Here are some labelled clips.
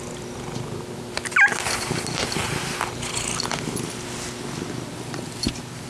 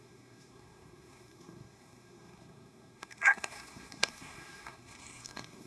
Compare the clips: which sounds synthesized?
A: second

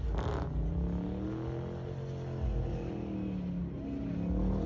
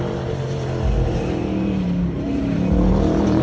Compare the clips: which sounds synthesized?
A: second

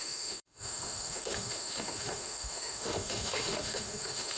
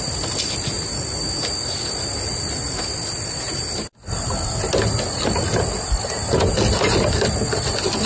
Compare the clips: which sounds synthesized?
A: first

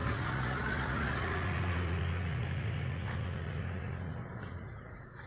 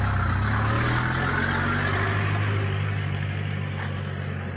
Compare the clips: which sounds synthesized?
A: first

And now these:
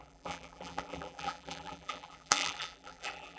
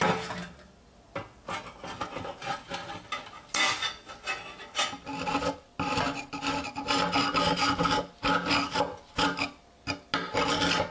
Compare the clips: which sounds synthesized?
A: first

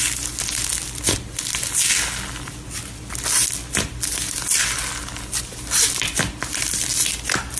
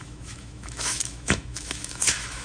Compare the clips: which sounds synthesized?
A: second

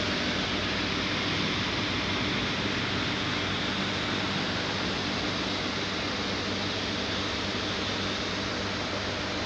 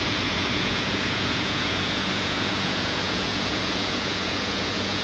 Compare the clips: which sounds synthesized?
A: second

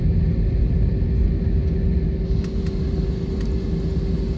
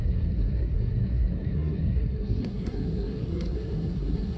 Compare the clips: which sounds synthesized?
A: second